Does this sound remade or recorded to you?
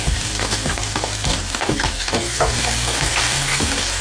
remade